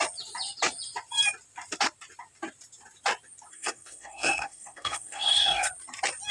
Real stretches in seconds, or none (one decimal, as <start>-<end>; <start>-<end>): 0.0-3.5; 5.7-6.3